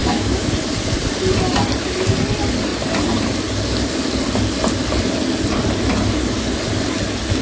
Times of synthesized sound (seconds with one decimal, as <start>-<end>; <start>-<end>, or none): 0.0-0.5